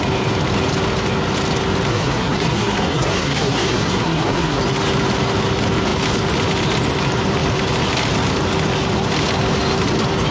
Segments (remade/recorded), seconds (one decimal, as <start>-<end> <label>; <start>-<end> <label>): 0.0-1.9 recorded; 1.9-4.6 remade; 4.6-10.3 recorded